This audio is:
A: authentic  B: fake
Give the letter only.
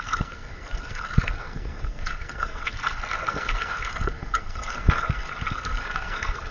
B